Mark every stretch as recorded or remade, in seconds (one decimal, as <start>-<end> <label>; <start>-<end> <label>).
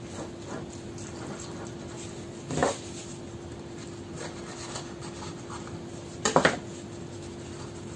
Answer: 0.0-8.0 recorded